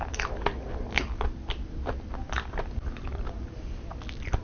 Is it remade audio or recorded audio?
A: remade